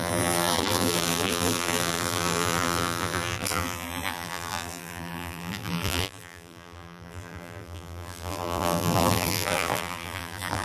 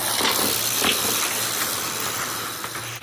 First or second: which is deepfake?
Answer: first